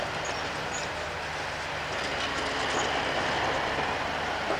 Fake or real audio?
real